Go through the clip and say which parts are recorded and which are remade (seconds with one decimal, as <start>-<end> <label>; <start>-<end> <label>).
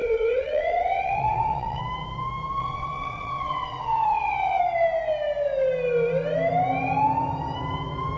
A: 0.0-1.8 remade; 1.8-2.6 recorded; 2.6-4.6 remade; 4.6-8.2 recorded